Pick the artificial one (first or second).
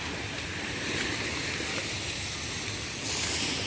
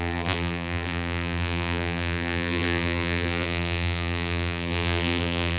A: second